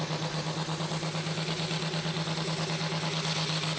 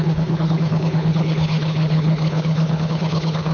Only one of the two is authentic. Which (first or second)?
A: first